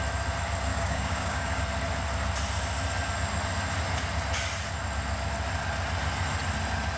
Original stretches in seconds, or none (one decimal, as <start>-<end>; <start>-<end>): 0.0-0.7; 1.6-7.0